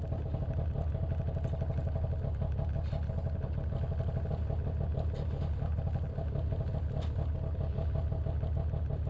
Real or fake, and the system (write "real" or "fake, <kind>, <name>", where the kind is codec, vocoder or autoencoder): real